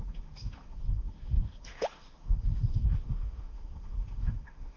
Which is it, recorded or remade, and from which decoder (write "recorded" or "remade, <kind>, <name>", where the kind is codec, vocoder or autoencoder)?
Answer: remade, autoencoder, DAC-VAE